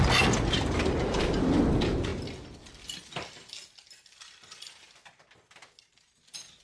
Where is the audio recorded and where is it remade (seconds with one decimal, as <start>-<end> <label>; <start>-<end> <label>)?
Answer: 0.0-6.6 recorded